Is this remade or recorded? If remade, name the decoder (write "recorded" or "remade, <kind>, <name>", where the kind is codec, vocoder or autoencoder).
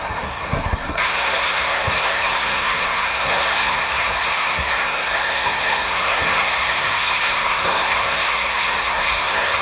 remade, codec, SNAC